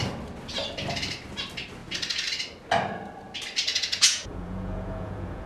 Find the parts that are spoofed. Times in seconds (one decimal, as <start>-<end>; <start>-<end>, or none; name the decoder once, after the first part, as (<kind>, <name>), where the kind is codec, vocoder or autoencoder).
3.7-5.5 (vocoder, Vocos)